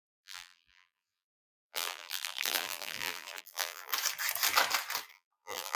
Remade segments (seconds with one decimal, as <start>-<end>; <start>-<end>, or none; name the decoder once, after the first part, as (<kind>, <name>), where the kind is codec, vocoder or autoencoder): 0.0-3.9 (vocoder, BigVGAN v2); 5.1-5.7